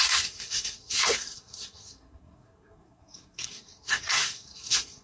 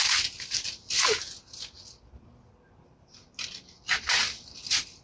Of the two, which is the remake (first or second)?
first